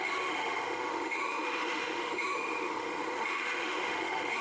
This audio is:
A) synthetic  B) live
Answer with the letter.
A